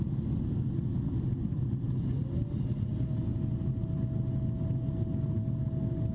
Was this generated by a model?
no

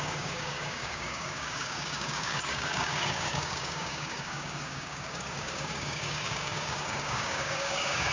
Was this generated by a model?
yes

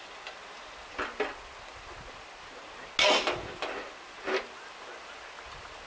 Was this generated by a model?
no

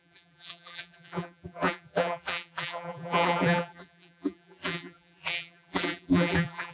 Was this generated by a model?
yes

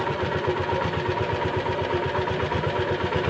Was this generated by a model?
no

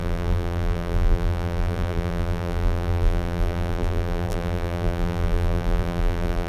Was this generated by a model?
yes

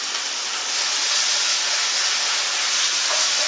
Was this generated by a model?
no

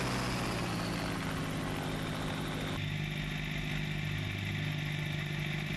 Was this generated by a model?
no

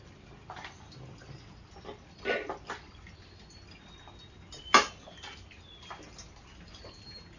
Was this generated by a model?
no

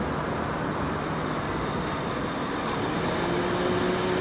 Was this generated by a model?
no